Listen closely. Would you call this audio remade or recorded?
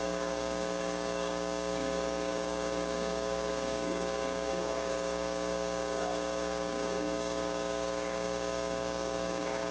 remade